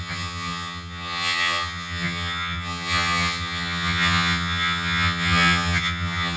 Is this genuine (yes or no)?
no